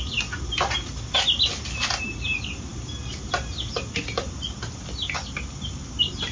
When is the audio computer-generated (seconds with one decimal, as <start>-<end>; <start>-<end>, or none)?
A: none